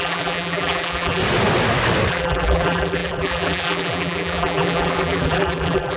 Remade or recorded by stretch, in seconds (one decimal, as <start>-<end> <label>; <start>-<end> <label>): 0.0-1.2 remade; 1.2-2.1 recorded; 2.1-6.0 remade